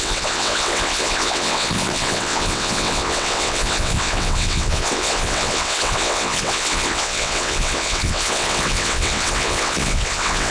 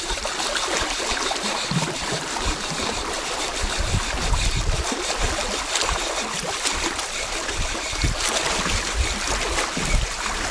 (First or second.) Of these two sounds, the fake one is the first